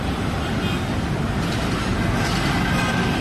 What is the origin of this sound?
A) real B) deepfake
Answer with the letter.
A